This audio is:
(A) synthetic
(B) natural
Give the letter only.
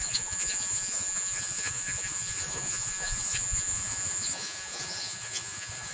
A